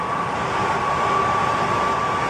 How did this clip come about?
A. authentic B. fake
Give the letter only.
A